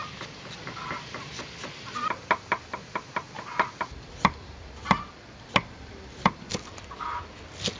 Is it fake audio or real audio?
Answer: real